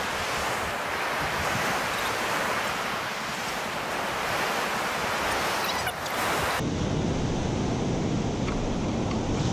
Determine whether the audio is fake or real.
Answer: real